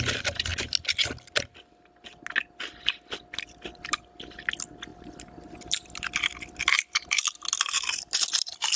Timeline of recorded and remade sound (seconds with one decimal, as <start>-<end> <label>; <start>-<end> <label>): 0.0-4.9 recorded; 4.9-7.3 remade; 7.3-8.8 recorded

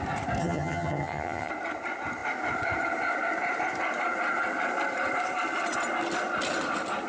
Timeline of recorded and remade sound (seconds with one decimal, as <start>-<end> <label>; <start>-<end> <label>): 0.0-0.4 recorded; 0.4-1.5 remade; 1.5-7.1 recorded

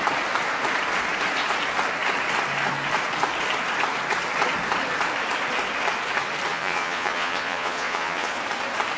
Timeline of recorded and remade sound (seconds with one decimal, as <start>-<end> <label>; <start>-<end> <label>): 0.0-6.5 recorded; 6.5-8.4 remade; 8.4-9.0 recorded

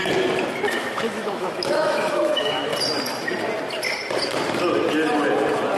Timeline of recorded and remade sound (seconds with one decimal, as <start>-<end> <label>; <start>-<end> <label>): 0.0-0.7 recorded; 0.7-2.7 remade; 2.7-5.8 recorded

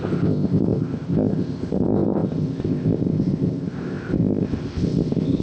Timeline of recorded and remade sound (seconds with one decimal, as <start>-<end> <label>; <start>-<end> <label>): 0.0-5.4 remade

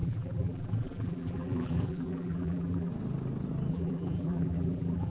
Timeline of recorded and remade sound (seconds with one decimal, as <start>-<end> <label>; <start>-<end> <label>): 0.0-2.9 remade; 2.9-3.7 recorded; 3.7-5.1 remade